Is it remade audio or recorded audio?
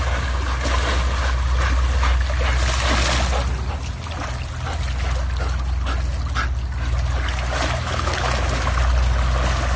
recorded